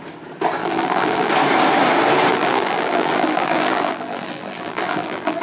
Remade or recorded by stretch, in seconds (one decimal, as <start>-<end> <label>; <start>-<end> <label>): 0.0-0.6 recorded; 0.6-1.3 remade; 1.3-2.3 recorded; 2.3-5.4 remade